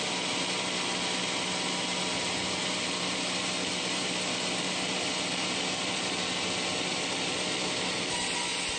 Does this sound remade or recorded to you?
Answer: recorded